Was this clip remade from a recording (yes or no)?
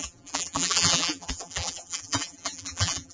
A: yes